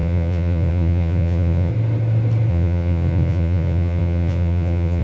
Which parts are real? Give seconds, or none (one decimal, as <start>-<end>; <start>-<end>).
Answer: 1.7-2.5